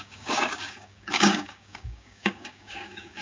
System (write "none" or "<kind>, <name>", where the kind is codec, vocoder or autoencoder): codec, DAC